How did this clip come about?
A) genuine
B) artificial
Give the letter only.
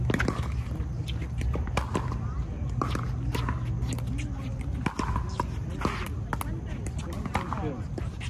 A